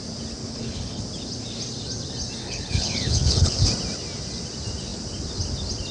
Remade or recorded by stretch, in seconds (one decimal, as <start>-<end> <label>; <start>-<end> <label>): 0.0-0.4 recorded; 0.4-1.0 remade; 1.0-2.4 recorded; 2.4-3.7 remade; 3.7-5.9 recorded